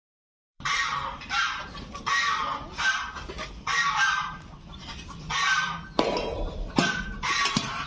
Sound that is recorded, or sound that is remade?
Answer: remade